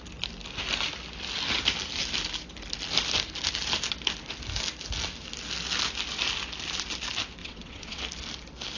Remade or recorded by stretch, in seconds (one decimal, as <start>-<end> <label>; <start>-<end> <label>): 0.0-7.4 recorded; 7.4-8.0 remade; 8.0-8.8 recorded